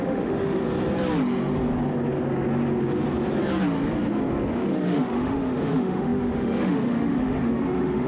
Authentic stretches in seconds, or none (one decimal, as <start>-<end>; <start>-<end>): 0.6-4.5